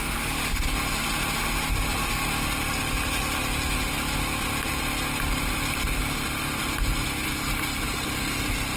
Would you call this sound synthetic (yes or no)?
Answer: no